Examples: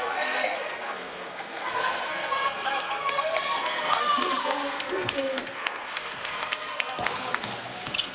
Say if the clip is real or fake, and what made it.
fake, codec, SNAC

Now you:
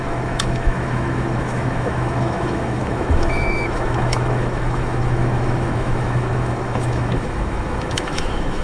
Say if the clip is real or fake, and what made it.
fake, autoencoder, DAC-VAE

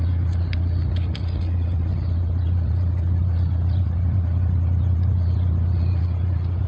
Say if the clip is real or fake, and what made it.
fake, vocoder, Vocos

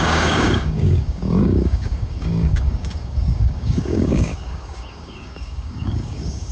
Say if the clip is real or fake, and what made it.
fake, codec, DAC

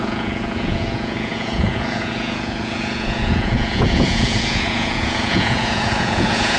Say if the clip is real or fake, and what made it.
fake, vocoder, Vocos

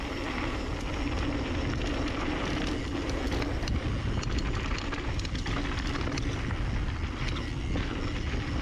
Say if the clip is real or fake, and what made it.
real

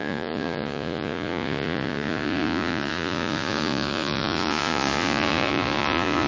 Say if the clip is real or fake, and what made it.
fake, vocoder, Vocos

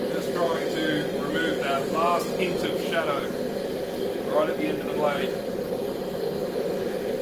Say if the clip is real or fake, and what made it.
real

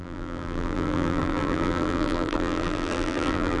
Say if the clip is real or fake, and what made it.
fake, vocoder, BigVGAN v2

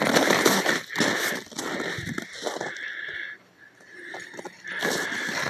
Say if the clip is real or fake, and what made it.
real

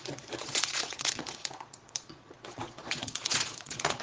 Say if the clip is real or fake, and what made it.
fake, vocoder, Vocos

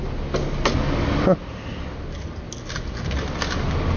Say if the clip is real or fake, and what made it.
real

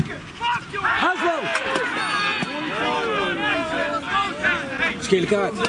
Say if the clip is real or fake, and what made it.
real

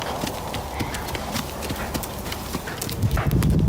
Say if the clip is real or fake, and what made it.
real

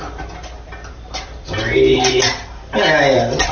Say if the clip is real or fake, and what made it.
real